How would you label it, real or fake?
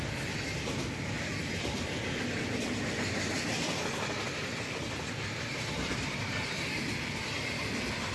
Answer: fake